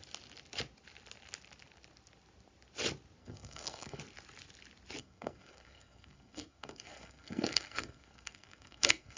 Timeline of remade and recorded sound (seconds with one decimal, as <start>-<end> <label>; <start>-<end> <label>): 0.0-3.2 recorded; 3.2-4.0 remade; 4.0-5.0 recorded; 5.0-9.2 remade